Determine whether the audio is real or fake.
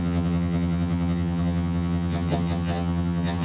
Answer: fake